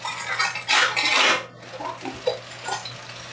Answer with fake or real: real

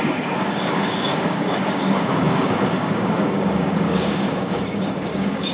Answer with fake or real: fake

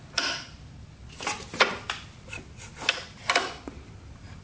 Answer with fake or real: real